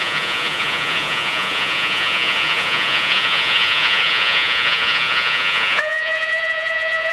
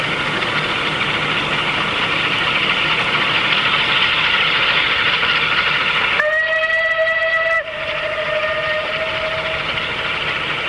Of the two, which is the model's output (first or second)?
first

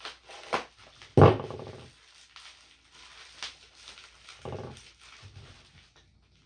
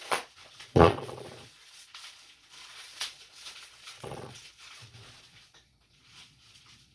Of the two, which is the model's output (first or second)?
second